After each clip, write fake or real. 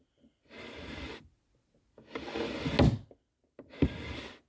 real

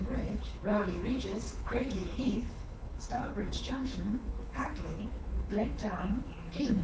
fake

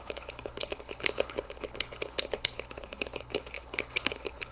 fake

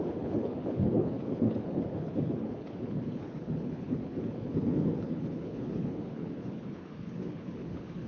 fake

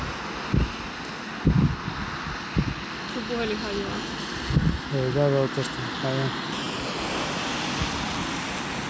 real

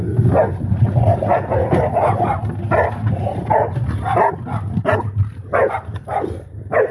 real